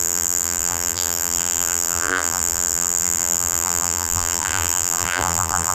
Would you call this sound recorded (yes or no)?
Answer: no